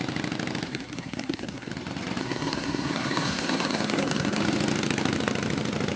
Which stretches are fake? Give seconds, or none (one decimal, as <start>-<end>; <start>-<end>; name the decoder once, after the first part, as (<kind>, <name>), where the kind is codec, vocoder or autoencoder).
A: 0.7-1.7 (codec, SNAC); 2.2-4.4

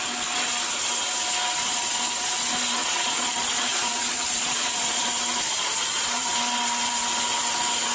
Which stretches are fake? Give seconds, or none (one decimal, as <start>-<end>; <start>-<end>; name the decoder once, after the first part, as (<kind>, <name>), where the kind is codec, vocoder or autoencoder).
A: 2.8-5.0 (vocoder, Vocos); 5.6-6.3